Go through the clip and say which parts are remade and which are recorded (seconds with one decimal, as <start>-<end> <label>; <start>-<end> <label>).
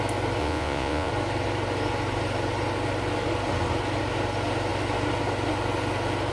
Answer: 0.0-0.4 recorded; 0.4-1.1 remade; 1.1-6.3 recorded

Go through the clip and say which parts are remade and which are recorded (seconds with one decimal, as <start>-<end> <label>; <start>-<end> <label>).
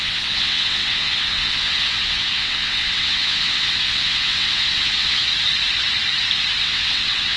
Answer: 0.0-5.2 remade; 5.2-6.6 recorded; 6.6-7.4 remade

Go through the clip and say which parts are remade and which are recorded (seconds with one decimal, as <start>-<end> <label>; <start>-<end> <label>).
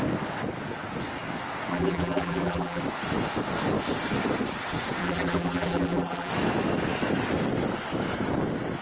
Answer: 0.0-1.7 recorded; 1.7-2.8 remade; 2.8-5.0 recorded; 5.0-6.3 remade; 6.3-8.8 recorded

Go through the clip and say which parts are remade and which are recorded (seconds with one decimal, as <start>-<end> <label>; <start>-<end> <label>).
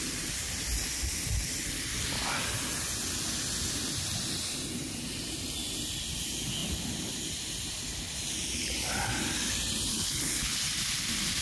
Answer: 0.0-9.9 recorded; 9.9-10.6 remade; 10.6-11.4 recorded